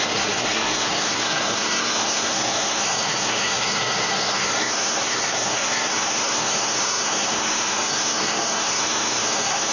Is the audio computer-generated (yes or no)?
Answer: yes